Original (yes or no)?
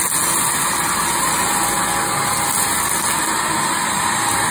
yes